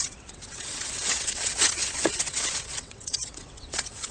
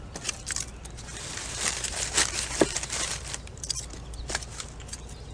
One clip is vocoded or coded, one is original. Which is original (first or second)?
second